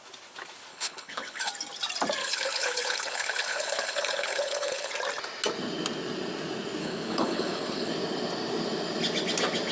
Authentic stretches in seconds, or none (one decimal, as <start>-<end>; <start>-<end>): 0.0-0.7; 1.5-2.2; 4.9-6.8; 7.9-9.7